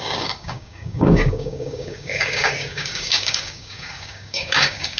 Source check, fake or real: fake